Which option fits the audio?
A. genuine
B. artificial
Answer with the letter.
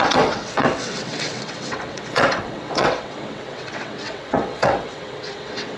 B